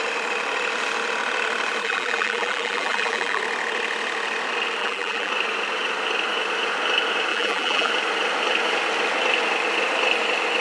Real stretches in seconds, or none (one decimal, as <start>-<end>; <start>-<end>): 0.0-1.8; 3.4-4.8; 5.3-7.3; 7.9-10.6